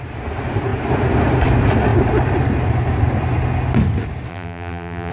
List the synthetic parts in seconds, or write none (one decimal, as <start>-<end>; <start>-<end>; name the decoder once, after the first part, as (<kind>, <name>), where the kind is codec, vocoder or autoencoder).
4.3-5.1 (vocoder, BigVGAN v2)